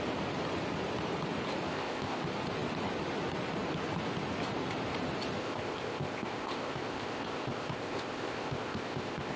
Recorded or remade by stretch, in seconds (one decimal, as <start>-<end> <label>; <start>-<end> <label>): 0.0-1.7 recorded; 1.7-2.2 remade; 2.2-5.4 recorded; 5.4-9.4 remade